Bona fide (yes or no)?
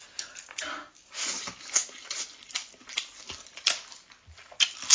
yes